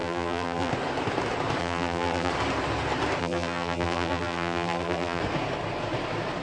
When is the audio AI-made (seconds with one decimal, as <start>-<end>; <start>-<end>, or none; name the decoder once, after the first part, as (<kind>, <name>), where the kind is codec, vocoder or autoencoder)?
0.0-0.7 (vocoder, BigVGAN v2); 1.6-2.3; 3.2-5.2